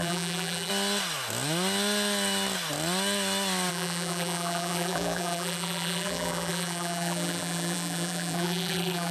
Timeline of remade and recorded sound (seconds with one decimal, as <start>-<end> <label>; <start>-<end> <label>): 0.0-0.7 remade; 0.7-3.7 recorded; 3.7-9.1 remade